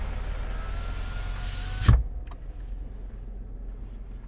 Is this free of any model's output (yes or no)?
yes